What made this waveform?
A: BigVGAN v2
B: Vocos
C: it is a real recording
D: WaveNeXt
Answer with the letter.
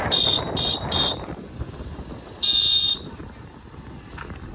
C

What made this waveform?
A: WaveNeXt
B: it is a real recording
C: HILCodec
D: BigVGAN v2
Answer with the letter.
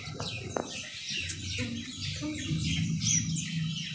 B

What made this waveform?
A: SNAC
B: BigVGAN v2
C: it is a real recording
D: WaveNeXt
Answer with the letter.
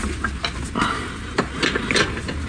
C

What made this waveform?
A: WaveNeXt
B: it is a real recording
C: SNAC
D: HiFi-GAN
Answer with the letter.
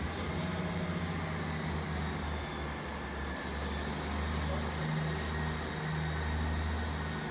B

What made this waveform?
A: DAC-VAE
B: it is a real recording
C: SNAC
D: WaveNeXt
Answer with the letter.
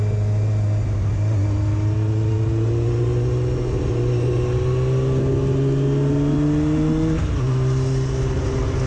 B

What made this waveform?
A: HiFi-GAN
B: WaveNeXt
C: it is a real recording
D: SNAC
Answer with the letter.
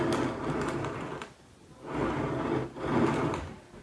C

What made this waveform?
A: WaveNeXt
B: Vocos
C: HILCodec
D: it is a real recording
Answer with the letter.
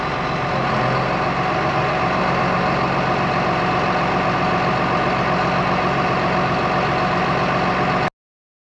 D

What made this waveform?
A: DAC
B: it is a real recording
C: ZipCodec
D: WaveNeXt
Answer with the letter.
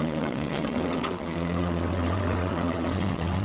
D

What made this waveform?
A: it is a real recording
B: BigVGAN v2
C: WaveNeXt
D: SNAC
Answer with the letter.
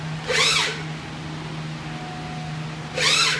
A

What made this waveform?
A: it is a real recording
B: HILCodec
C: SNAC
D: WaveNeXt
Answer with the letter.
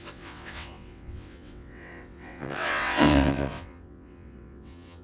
D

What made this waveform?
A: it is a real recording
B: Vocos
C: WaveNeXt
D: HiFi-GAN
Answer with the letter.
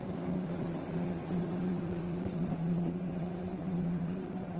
C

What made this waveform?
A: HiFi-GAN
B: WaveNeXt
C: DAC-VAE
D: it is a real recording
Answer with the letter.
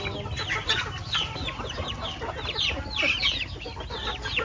D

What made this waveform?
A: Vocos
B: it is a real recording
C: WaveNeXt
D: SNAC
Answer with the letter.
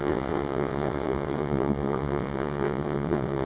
C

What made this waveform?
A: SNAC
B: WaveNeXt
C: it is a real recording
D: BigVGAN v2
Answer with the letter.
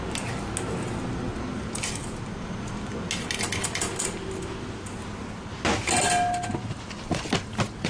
C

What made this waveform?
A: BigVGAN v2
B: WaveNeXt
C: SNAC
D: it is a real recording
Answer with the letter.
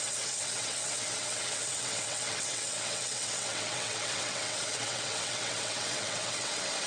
B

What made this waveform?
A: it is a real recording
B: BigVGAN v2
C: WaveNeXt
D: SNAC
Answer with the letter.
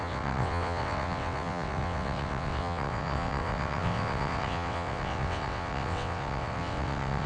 C